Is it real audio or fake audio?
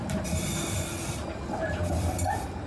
fake